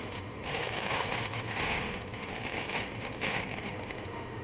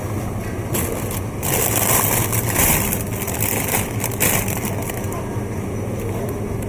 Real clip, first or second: second